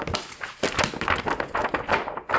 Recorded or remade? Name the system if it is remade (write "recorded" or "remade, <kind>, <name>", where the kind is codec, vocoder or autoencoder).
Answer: recorded